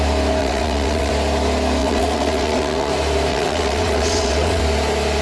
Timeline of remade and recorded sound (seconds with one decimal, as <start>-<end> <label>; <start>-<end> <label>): 0.0-0.4 recorded; 0.4-1.1 remade; 1.1-1.8 recorded; 1.8-2.9 remade; 2.9-3.3 recorded; 3.3-4.6 remade; 4.6-5.2 recorded